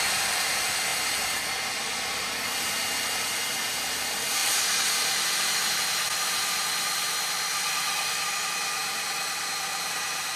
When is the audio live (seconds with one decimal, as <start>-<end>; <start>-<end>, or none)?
0.0-0.9; 1.4-4.4; 5.7-10.4